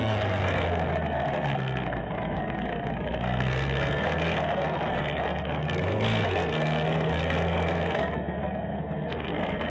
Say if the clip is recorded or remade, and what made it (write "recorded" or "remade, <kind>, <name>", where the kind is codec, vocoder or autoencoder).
remade, codec, SNAC